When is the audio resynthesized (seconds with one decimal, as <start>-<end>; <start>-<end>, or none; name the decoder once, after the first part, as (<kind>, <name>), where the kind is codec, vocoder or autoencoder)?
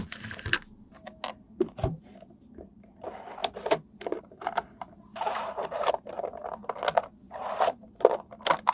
5.1-5.9 (vocoder, BigVGAN v2)